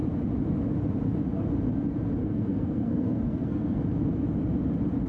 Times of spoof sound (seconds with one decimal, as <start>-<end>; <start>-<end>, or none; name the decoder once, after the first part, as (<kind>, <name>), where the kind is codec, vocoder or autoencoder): 2.2-3.8 (codec, SNAC)